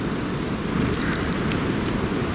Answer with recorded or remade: recorded